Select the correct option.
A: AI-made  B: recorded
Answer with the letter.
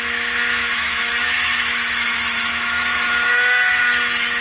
A